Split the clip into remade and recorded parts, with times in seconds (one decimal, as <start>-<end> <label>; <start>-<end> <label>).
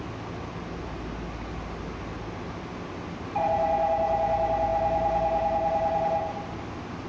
0.0-7.1 recorded